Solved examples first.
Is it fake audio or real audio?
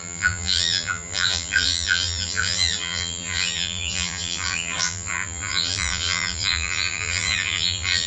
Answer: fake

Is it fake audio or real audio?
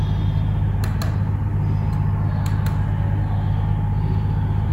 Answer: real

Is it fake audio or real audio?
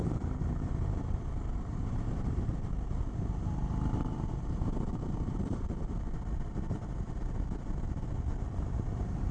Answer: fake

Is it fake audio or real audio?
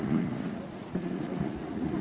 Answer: fake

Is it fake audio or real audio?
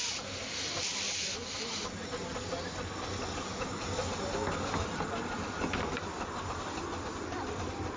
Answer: fake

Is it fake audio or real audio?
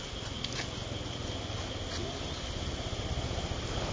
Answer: real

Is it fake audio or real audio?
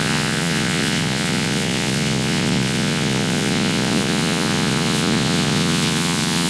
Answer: fake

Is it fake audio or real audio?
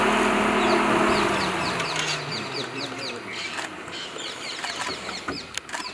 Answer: real